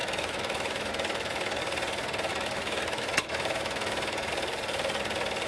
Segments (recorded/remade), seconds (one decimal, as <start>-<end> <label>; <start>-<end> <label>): 0.0-0.9 remade; 0.9-2.3 recorded; 2.3-4.3 remade; 4.3-5.5 recorded